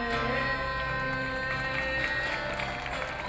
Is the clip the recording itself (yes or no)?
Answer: yes